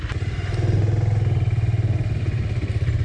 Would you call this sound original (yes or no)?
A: yes